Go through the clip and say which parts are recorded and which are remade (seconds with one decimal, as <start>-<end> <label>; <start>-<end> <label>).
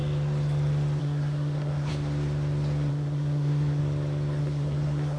0.0-1.0 recorded; 1.0-1.9 remade; 1.9-2.9 recorded; 2.9-3.8 remade; 3.8-4.4 recorded; 4.4-5.2 remade